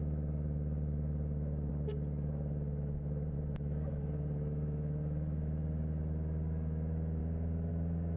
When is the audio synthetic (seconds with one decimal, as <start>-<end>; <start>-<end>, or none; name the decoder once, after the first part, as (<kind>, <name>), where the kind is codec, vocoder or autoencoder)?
0.0-7.2 (autoencoder, DAC-VAE); 7.7-8.2